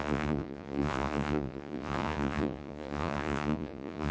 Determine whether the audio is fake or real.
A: fake